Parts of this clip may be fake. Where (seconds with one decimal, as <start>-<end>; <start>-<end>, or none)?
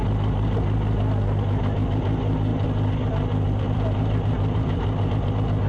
2.5-5.1